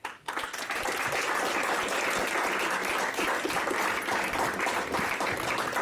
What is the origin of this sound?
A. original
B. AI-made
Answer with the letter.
A